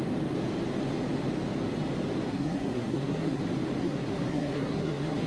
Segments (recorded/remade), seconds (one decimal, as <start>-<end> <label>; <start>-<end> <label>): 0.0-2.3 recorded; 2.3-3.4 remade; 3.4-3.8 recorded; 3.8-5.3 remade